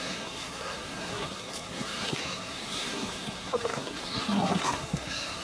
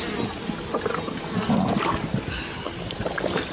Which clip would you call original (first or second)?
second